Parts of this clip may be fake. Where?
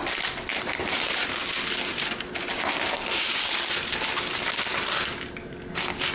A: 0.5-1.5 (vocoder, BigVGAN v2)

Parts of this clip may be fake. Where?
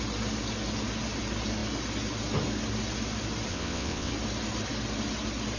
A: 3.5-4.1 (vocoder, WaveNeXt)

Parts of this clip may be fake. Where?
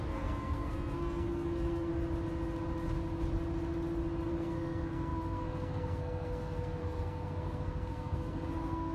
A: 0.0-1.9 (codec, SNAC); 4.3-8.9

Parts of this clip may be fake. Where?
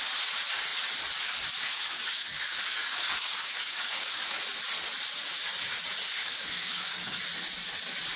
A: 1.7-4.4 (codec, DAC); 6.0-7.2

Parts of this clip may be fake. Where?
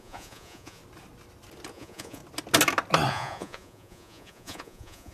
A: 0.0-0.8 (vocoder, Vocos); 1.7-2.2; 3.1-5.1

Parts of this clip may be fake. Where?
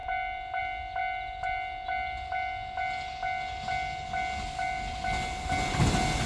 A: none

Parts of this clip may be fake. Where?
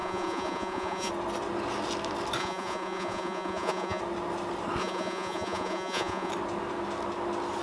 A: 0.0-1.1 (vocoder, Vocos); 2.4-4.0; 4.8-6.3